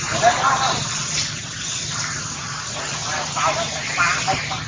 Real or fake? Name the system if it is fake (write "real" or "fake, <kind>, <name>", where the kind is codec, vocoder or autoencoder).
real